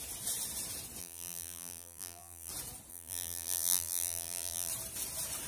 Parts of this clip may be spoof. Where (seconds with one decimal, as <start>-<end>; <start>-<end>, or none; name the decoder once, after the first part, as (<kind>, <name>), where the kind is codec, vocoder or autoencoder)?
1.0-2.5 (vocoder, BigVGAN v2); 2.9-4.7